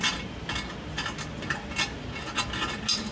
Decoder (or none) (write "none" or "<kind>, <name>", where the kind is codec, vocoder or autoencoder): none